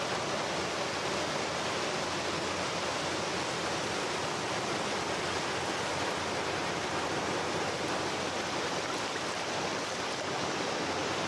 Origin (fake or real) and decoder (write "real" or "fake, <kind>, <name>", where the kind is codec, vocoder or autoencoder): real